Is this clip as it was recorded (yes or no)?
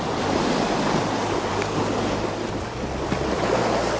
yes